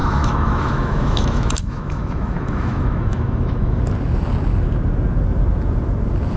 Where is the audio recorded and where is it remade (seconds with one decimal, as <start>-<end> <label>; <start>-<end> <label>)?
0.0-3.8 remade; 3.8-6.4 recorded